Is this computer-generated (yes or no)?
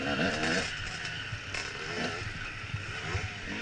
no